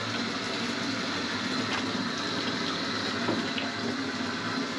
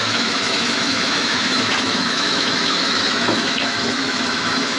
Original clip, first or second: first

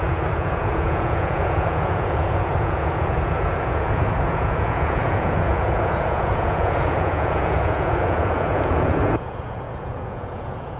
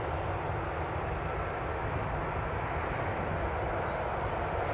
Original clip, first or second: second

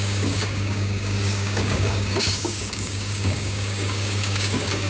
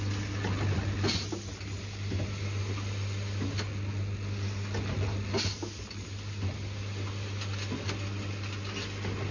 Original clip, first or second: second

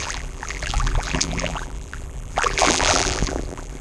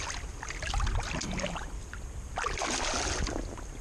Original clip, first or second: second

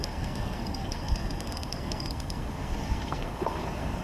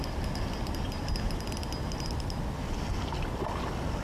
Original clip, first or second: second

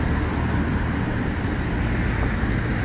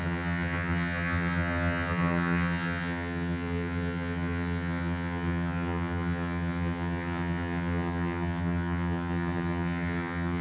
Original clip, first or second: first